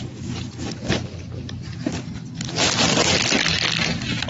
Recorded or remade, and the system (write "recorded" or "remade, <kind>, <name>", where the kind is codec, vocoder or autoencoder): recorded